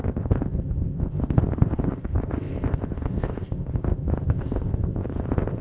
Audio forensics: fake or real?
fake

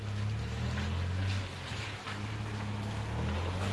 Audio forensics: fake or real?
real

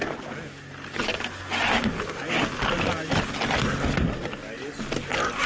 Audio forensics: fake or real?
real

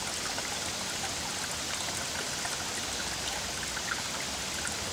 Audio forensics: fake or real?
real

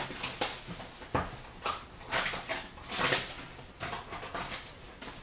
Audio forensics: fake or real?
real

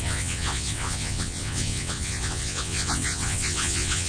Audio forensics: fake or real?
fake